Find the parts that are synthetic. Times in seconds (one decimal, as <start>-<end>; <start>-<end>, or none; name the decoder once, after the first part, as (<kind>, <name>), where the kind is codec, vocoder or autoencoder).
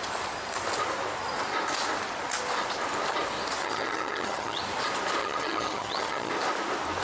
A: 3.6-4.6 (vocoder, HiFi-GAN); 5.2-6.3